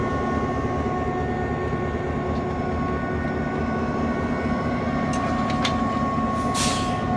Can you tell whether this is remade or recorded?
recorded